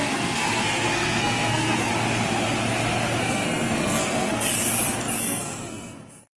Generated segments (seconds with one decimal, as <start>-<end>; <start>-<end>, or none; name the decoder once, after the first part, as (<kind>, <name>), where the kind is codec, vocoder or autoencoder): 0.0-1.9 (codec, SNAC); 3.2-4.5; 5.2-6.4

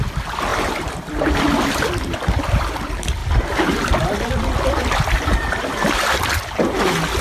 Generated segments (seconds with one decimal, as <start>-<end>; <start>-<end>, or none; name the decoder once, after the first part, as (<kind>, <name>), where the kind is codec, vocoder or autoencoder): none

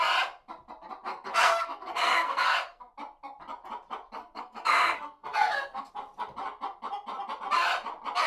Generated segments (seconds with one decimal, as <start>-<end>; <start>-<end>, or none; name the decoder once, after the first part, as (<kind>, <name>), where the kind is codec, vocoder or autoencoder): 1.1-2.9 (codec, SNAC); 4.2-5.9

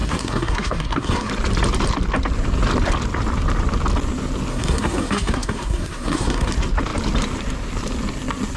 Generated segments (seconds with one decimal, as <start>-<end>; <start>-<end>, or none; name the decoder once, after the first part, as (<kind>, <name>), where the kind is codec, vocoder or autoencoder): 0.0-1.3 (codec, SNAC); 4.5-6.5

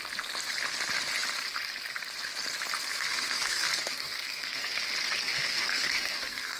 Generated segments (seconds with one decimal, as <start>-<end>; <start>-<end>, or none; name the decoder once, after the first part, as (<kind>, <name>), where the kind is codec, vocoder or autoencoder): 2.9-4.8 (codec, SNAC); 5.2-6.6